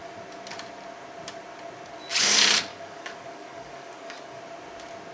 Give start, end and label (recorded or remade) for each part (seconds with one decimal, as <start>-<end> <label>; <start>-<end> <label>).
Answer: 0.0-2.7 recorded; 2.7-4.4 remade; 4.4-5.1 recorded